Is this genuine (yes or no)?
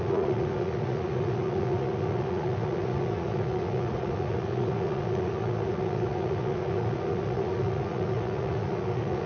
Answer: no